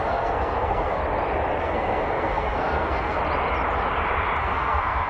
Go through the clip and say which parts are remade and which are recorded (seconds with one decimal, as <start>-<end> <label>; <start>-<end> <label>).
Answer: 0.0-1.0 remade; 1.0-1.6 recorded; 1.6-3.2 remade; 3.2-4.4 recorded; 4.4-5.1 remade